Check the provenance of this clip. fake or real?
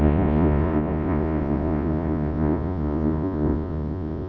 fake